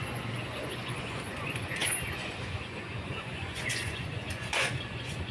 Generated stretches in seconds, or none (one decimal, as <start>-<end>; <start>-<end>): 0.0-5.3